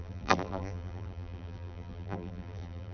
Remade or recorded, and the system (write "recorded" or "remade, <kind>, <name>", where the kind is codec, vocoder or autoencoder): remade, vocoder, BigVGAN v2